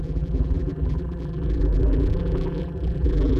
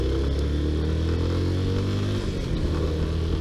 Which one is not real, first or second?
first